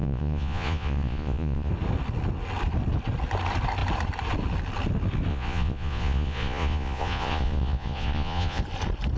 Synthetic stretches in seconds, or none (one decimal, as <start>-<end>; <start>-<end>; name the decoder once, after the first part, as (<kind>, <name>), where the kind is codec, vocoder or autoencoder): 0.0-1.7 (vocoder, Vocos); 5.3-8.6